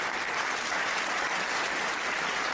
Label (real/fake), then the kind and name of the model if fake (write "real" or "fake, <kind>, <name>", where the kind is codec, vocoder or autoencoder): fake, vocoder, BigVGAN v2